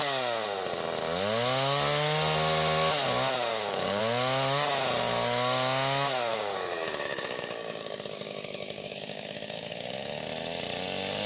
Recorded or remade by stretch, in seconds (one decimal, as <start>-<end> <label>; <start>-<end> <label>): 0.0-3.5 recorded; 3.5-4.0 remade; 4.0-6.3 recorded; 6.3-10.2 remade; 10.2-11.3 recorded